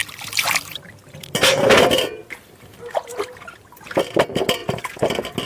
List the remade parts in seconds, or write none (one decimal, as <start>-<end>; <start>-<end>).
0.0-1.6; 2.2-3.2; 4.6-5.1

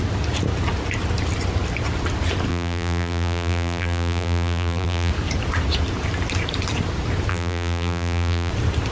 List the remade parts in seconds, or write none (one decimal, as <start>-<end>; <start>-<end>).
2.5-5.1; 7.3-8.5

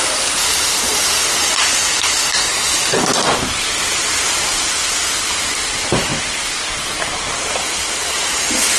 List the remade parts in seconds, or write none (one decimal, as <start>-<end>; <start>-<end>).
0.0-2.5; 3.9-6.1; 7.2-8.8

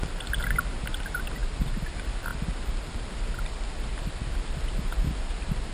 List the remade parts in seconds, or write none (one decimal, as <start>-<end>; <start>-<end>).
1.4-1.9

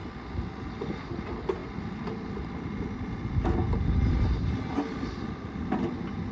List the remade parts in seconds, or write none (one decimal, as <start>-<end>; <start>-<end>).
none

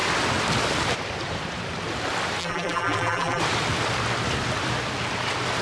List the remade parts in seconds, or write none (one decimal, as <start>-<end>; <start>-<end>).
2.4-3.4

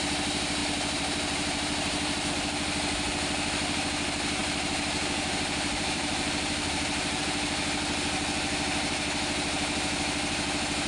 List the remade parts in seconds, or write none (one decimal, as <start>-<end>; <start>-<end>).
0.6-2.3; 4.4-7.2